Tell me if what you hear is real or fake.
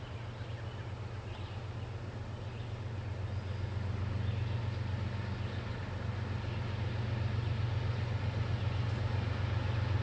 real